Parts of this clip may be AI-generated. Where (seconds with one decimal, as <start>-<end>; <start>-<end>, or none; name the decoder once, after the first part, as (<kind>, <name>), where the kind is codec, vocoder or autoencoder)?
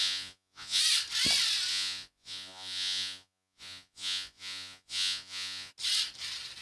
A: 0.0-0.8 (vocoder, Vocos); 1.7-5.7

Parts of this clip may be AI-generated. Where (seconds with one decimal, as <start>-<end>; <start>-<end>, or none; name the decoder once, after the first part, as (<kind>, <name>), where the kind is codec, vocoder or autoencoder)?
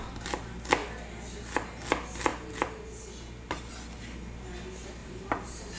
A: 5.0-5.8 (vocoder, BigVGAN v2)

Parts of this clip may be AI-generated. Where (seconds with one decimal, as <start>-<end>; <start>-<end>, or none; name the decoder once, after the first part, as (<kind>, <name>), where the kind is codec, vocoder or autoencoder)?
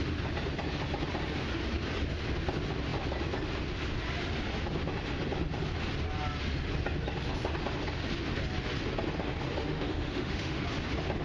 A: 9.6-10.6 (autoencoder, DAC-VAE)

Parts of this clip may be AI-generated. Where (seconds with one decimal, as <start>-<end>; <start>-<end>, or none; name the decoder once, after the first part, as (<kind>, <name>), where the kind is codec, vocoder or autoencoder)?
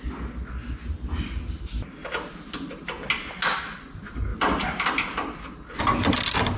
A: none